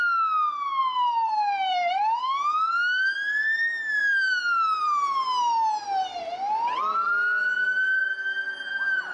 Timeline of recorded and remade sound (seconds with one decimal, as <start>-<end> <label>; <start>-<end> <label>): 0.0-0.8 recorded; 0.8-2.2 remade; 2.2-4.0 recorded; 4.0-6.2 remade; 6.2-9.1 recorded